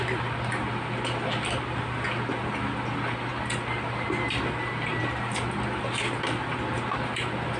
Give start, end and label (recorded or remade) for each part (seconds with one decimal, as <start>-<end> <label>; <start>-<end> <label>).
0.0-7.6 recorded